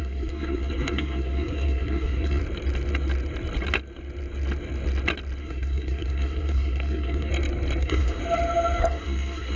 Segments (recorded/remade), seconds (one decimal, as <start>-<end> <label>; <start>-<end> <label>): 0.0-2.4 remade; 2.4-5.4 recorded; 5.4-7.3 remade; 7.3-7.8 recorded; 7.8-8.2 remade; 8.2-8.8 recorded; 8.8-9.6 remade